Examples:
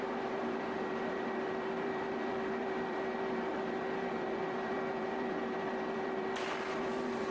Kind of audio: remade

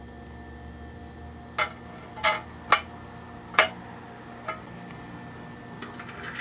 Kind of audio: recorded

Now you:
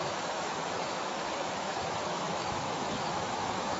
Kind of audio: remade